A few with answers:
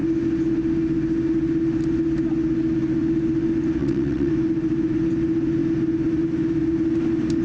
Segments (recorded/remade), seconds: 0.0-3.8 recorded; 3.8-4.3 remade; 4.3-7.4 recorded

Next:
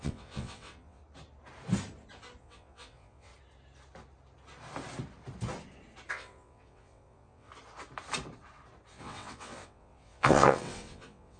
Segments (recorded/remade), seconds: 0.0-1.0 remade; 1.0-2.4 recorded; 2.4-3.3 remade; 3.3-6.1 recorded; 6.1-7.5 remade; 7.5-8.9 recorded; 8.9-11.4 remade

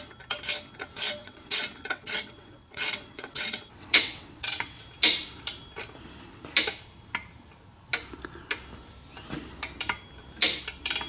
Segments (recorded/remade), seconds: 0.0-1.2 recorded; 1.2-4.8 remade; 4.8-11.1 recorded

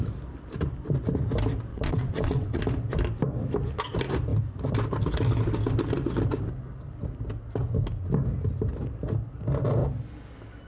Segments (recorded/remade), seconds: 0.0-1.7 recorded; 1.7-2.6 remade; 2.6-10.7 recorded

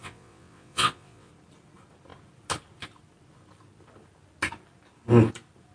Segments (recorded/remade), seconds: 0.0-1.3 remade; 1.3-5.7 recorded